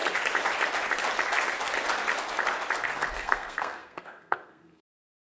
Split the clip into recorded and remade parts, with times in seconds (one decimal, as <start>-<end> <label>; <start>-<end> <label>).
0.0-3.1 recorded; 3.1-5.2 remade